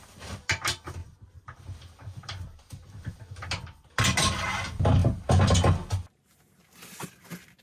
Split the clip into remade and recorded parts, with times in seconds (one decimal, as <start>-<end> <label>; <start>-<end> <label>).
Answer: 0.0-7.6 recorded